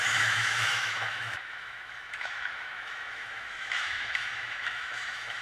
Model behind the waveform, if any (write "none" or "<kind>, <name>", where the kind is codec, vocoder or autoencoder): autoencoder, DAC-VAE